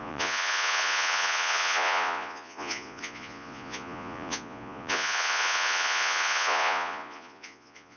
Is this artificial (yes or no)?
yes